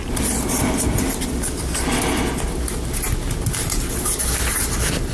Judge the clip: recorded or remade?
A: recorded